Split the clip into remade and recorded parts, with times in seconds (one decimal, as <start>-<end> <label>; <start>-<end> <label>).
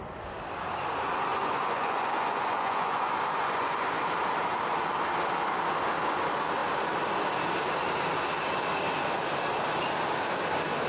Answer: 0.0-1.3 recorded; 1.3-4.0 remade; 4.0-10.9 recorded